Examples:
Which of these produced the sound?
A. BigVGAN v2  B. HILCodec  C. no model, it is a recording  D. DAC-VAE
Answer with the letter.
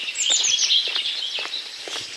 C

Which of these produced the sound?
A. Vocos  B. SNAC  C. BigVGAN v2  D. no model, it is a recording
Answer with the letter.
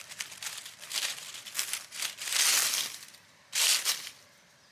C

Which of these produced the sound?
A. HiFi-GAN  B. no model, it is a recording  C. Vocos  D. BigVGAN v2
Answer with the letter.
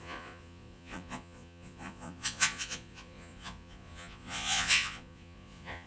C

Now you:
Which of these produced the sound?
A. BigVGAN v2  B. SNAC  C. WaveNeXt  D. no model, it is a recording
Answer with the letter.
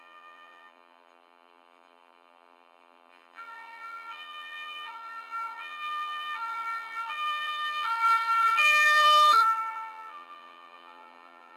A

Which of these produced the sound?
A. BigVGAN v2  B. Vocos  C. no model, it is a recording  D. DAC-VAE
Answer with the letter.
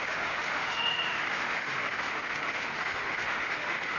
D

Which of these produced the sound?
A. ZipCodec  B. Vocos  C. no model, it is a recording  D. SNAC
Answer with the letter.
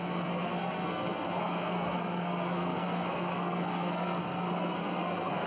D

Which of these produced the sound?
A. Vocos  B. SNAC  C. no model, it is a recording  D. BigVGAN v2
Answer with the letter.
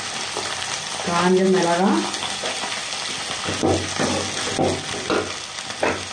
C